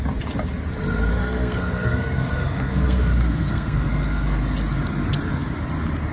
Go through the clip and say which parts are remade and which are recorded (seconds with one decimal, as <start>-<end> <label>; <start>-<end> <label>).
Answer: 0.0-1.2 recorded; 1.2-4.4 remade; 4.4-6.1 recorded